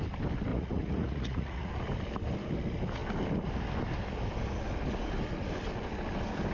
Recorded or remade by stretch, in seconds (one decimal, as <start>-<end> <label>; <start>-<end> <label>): 0.0-0.5 recorded; 0.5-1.7 remade; 1.7-6.5 recorded